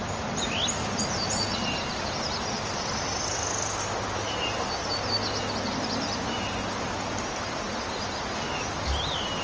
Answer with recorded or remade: recorded